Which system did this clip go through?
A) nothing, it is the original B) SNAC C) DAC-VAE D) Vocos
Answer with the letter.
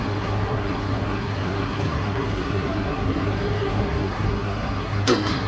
B